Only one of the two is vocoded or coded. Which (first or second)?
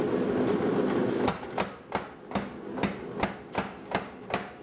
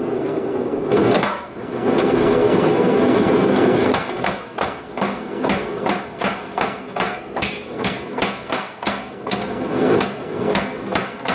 second